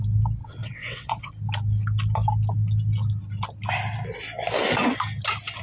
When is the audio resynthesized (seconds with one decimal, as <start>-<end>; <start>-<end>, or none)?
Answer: 0.4-1.3